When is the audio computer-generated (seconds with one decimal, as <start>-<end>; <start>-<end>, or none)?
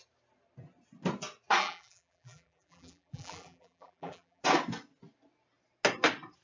1.6-4.4